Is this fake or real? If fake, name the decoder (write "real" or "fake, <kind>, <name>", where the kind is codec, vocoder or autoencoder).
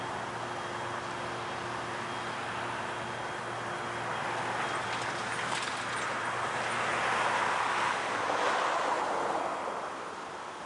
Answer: real